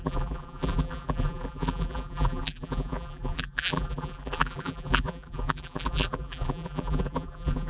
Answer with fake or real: fake